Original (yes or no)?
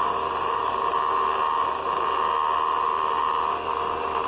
yes